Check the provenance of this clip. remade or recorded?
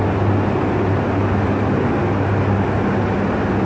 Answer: recorded